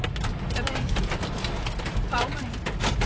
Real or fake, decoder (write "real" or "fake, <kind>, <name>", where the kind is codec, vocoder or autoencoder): real